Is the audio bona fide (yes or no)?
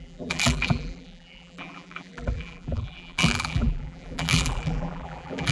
no